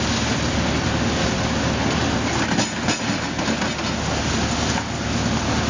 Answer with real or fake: real